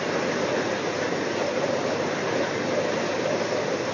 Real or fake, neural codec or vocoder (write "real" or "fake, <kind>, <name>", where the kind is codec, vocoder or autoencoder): fake, vocoder, BigVGAN v2